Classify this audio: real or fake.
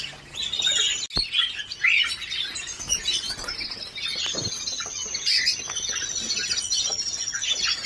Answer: real